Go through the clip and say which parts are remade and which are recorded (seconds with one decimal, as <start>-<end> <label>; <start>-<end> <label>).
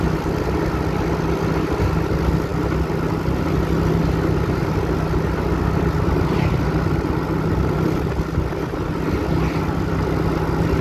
0.0-10.8 recorded